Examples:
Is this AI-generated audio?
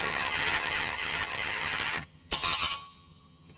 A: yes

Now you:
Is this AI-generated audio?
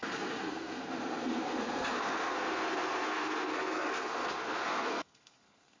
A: yes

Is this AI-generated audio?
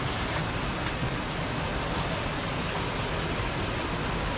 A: no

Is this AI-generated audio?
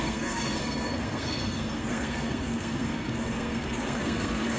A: yes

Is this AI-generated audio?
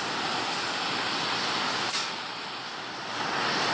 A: no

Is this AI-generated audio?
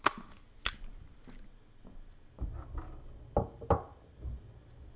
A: no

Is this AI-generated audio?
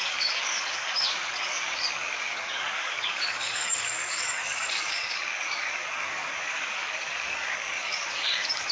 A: yes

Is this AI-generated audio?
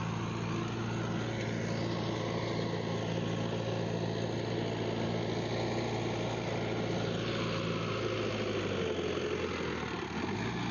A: no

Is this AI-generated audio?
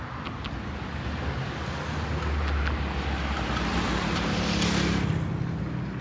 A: no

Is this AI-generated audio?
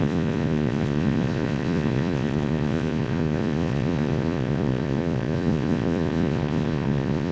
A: yes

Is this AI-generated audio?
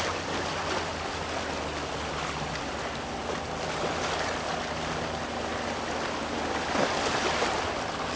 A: no